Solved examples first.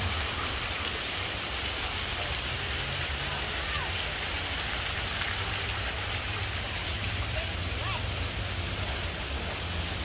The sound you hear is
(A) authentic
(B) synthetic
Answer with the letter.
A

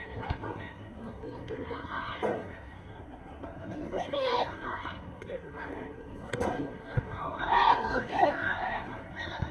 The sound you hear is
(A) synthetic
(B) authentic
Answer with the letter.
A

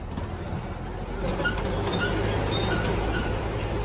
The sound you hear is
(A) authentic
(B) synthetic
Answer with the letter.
A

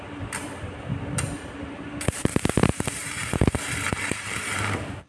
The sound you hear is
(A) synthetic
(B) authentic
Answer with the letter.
A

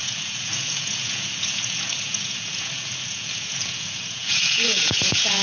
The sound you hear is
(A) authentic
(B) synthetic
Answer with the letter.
B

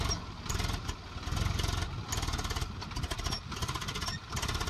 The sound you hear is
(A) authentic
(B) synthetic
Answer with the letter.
A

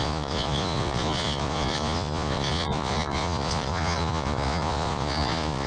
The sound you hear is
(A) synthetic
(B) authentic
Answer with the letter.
A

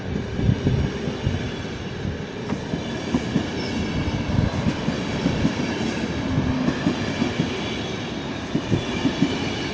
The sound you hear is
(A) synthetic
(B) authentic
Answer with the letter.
B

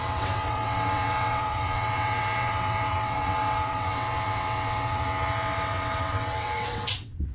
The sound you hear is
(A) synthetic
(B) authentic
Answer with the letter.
A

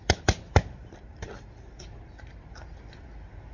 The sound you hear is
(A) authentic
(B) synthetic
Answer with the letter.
A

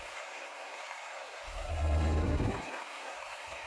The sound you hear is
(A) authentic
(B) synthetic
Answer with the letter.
B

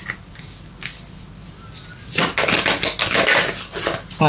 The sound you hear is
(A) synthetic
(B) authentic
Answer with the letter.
B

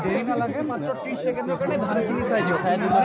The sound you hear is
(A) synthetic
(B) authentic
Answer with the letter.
B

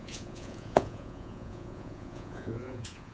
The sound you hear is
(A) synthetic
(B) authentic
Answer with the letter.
A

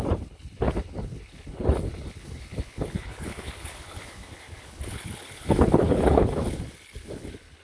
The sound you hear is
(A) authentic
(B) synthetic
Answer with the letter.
B